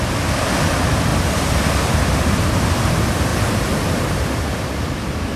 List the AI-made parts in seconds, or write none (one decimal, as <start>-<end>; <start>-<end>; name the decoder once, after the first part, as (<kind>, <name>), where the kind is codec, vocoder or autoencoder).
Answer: 0.0-3.3 (vocoder, BigVGAN v2); 4.1-5.4